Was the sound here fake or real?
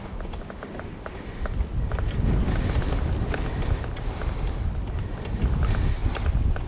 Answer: real